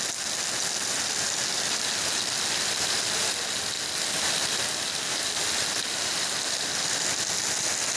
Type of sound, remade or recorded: recorded